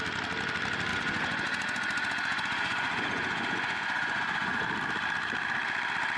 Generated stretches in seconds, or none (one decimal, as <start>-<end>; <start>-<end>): 0.9-4.6

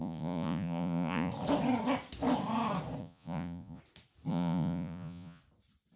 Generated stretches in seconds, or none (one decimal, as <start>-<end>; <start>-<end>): 0.0-1.3; 3.0-3.8; 4.3-5.4

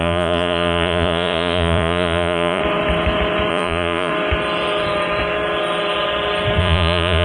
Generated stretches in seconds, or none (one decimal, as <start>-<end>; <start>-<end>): 0.0-2.6; 3.5-4.1; 6.6-7.2